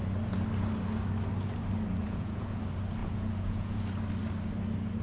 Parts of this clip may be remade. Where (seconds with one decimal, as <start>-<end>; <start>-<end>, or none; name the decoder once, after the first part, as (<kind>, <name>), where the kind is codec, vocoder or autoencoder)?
2.0-2.6 (vocoder, Vocos); 3.0-3.8